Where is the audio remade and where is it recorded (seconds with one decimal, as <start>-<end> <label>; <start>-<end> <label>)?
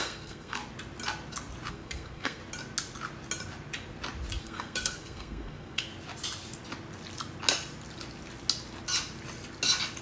0.0-0.6 remade; 0.6-1.7 recorded; 1.7-2.4 remade; 2.4-4.4 recorded; 4.4-5.9 remade; 5.9-10.0 recorded